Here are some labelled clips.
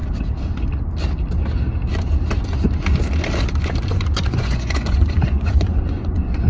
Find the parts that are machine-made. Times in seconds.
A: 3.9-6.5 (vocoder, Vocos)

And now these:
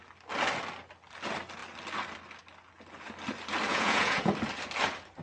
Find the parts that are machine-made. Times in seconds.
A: 3.7-4.3 (vocoder, Vocos)

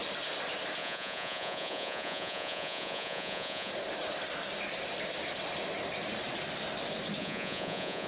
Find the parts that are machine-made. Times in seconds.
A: 0.8-3.7 (vocoder, Vocos); 7.2-8.1